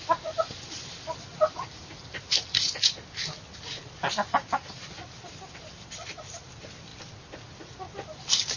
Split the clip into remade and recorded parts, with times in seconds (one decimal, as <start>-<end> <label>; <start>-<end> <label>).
0.0-6.9 remade; 6.9-8.2 recorded; 8.2-8.6 remade